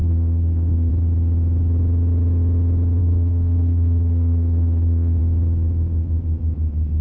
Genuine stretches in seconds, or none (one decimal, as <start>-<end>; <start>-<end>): 0.9-3.0; 5.2-7.0